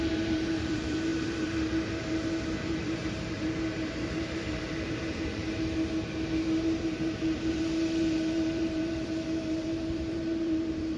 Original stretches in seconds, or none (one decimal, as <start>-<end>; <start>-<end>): 5.4-6.6